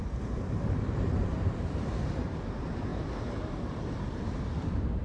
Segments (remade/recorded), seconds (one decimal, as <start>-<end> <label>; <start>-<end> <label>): 0.0-5.0 remade